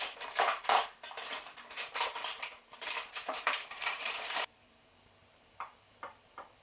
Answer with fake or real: fake